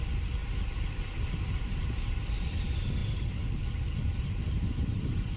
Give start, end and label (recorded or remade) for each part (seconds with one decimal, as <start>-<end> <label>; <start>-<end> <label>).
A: 0.0-5.4 recorded